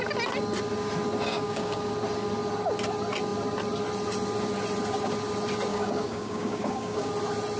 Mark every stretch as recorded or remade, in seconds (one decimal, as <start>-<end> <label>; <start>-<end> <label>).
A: 0.0-1.3 recorded; 1.3-1.9 remade; 1.9-5.7 recorded; 5.7-7.1 remade; 7.1-7.6 recorded